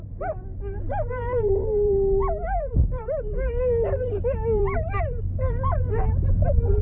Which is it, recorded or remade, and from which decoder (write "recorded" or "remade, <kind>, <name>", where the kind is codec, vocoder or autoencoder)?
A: remade, vocoder, BigVGAN v2